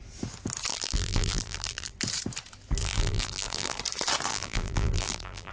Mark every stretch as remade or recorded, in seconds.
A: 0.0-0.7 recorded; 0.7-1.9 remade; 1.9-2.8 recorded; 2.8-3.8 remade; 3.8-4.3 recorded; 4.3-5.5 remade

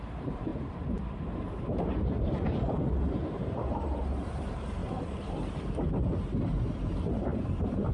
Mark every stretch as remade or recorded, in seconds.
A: 0.0-7.9 remade

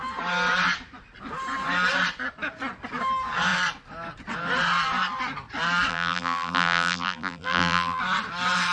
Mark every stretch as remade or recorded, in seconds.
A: 0.0-5.9 recorded; 5.9-8.0 remade; 8.0-8.7 recorded

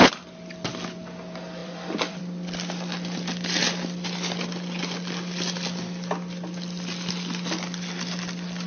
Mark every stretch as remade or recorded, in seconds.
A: 0.0-1.6 recorded; 1.6-2.2 remade; 2.2-8.7 recorded

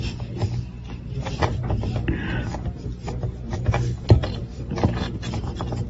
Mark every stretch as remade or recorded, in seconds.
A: 0.0-4.4 recorded; 4.4-5.4 remade; 5.4-5.9 recorded